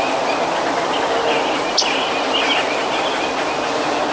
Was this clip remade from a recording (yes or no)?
no